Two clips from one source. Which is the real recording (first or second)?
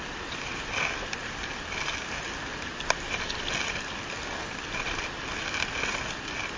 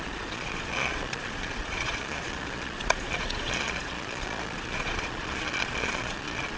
first